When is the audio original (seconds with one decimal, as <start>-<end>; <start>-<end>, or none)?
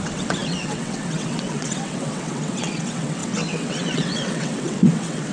none